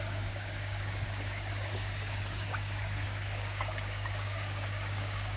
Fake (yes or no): yes